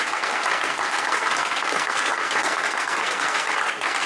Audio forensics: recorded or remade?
remade